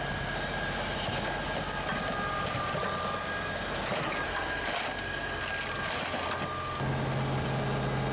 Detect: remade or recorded recorded